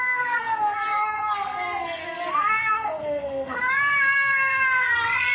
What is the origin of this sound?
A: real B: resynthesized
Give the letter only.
B